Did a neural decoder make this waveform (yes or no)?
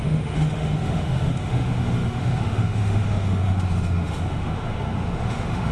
yes